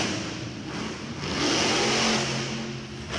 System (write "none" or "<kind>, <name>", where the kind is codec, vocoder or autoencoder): none